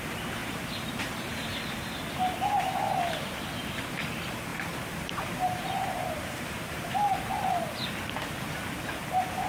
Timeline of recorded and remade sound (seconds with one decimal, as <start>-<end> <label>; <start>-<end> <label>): 0.0-0.4 recorded; 0.4-1.3 remade; 1.3-4.5 recorded; 4.5-7.5 remade; 7.5-9.5 recorded